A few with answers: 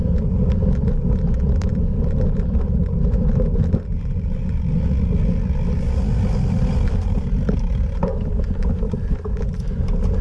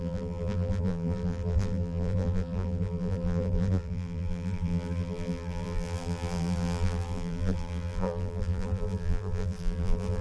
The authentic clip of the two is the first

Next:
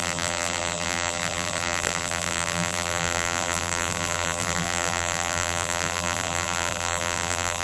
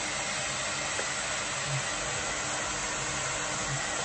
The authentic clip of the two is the second